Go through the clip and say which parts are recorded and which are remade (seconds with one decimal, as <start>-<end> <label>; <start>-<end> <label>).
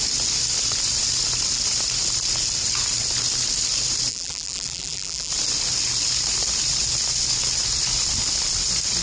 0.0-4.1 recorded; 4.1-5.3 remade; 5.3-9.0 recorded